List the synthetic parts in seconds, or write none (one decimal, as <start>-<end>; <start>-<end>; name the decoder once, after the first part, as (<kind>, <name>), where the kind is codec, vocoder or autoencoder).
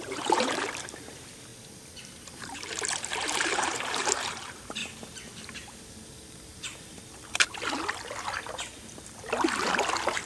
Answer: 0.0-1.5 (vocoder, BigVGAN v2); 2.0-4.8